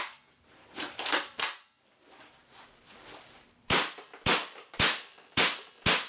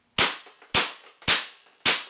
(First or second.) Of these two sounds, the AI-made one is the first